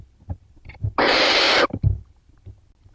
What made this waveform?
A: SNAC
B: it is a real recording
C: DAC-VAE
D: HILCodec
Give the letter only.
B